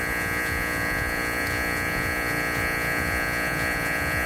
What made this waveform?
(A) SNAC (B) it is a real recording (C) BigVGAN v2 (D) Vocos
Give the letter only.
D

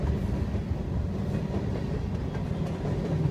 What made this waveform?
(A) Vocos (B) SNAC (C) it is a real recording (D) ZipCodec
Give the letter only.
C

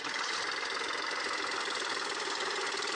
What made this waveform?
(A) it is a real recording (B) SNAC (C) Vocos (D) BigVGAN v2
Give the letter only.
A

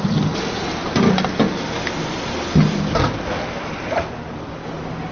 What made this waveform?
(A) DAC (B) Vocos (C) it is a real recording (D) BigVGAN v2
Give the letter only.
C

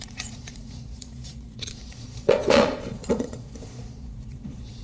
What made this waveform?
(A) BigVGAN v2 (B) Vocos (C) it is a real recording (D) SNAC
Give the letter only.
B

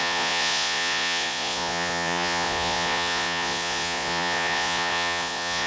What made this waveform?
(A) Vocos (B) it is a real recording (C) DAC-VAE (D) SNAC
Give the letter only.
A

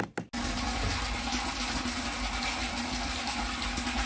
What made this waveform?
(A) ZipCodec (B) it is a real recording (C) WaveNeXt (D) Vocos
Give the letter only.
B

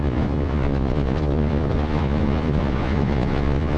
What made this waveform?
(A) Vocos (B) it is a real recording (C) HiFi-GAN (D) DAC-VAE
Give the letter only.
A